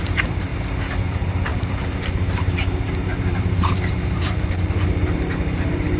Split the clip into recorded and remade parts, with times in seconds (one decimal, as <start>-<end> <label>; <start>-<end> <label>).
0.0-0.5 remade; 0.5-1.1 recorded; 1.1-6.0 remade